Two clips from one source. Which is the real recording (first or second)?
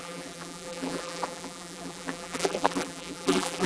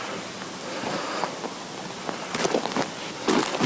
second